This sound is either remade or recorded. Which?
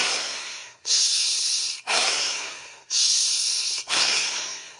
remade